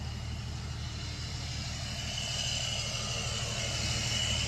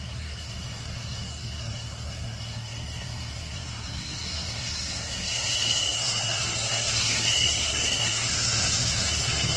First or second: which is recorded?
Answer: first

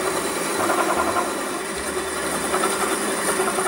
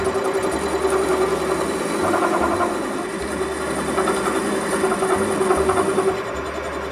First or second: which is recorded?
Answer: second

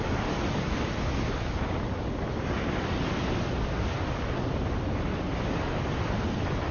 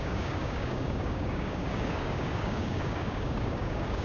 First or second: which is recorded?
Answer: first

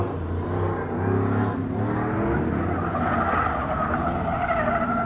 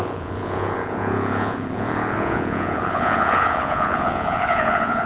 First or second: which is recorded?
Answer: first